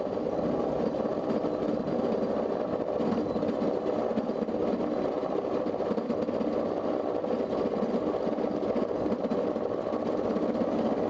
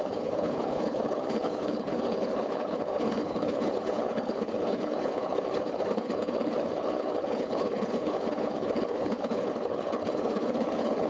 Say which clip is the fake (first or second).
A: second